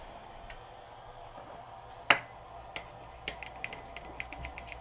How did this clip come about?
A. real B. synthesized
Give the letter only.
A